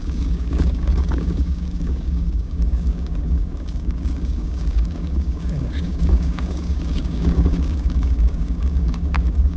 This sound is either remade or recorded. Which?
remade